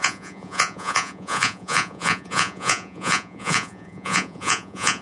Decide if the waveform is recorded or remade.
remade